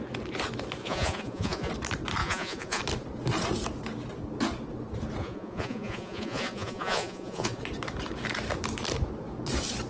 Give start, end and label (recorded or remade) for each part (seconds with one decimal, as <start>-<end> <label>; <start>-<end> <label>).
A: 0.0-0.8 recorded; 0.8-1.7 remade; 1.7-2.2 recorded; 2.2-2.8 remade; 2.8-5.2 recorded; 5.2-7.6 remade; 7.6-9.9 recorded